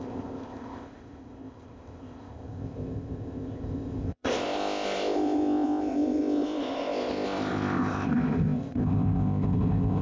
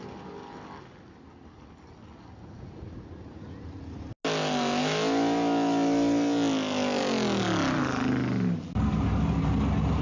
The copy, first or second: first